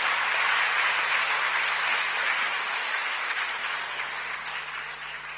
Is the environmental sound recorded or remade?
recorded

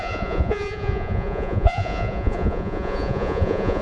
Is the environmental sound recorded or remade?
remade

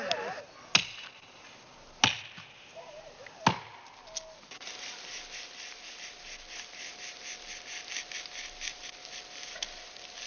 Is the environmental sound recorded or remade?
recorded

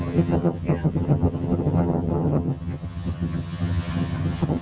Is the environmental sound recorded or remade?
remade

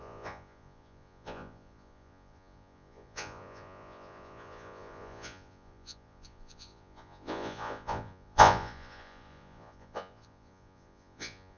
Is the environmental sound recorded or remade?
remade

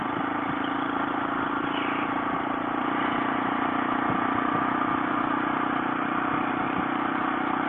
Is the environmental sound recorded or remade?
remade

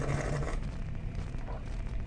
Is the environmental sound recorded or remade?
remade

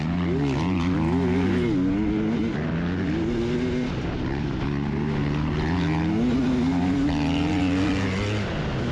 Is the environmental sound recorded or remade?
recorded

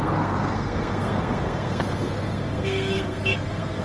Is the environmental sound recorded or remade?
remade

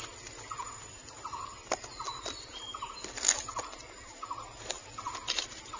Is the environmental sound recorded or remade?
recorded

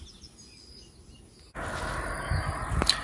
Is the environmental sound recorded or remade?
recorded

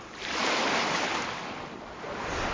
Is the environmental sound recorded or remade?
recorded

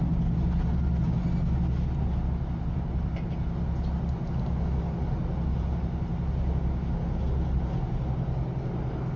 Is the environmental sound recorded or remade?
recorded